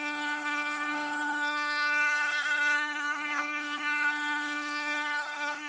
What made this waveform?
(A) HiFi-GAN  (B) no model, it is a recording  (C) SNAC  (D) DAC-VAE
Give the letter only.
C